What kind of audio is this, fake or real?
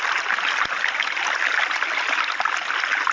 real